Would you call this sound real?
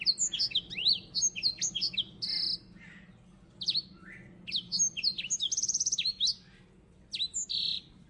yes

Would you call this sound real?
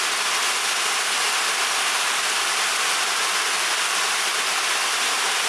yes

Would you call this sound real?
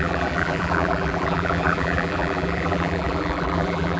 no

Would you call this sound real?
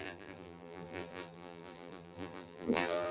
no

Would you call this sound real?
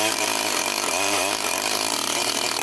no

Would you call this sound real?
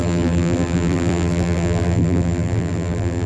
no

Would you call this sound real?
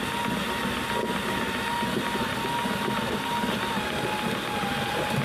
yes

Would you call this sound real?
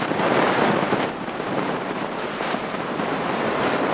no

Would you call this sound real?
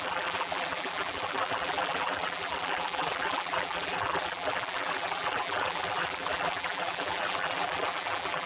no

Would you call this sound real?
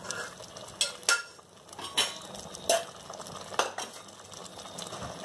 yes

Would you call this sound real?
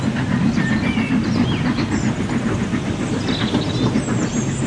yes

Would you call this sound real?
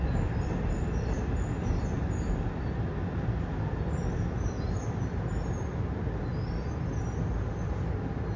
yes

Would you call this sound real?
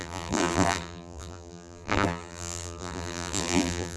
no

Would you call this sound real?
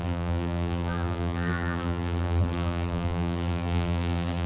no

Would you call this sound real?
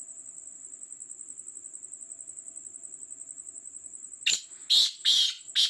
yes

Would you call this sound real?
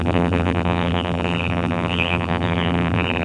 no